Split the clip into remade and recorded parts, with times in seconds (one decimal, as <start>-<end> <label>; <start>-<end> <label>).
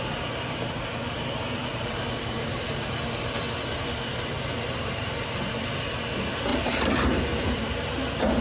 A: 0.0-1.7 recorded; 1.7-3.3 remade; 3.3-4.1 recorded; 4.1-5.1 remade; 5.1-6.5 recorded; 6.5-7.2 remade; 7.2-8.4 recorded